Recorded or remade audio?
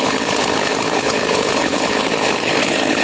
remade